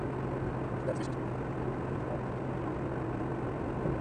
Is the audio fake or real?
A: real